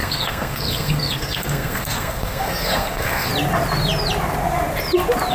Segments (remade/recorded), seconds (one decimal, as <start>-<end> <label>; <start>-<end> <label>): 0.0-3.3 remade; 3.3-5.3 recorded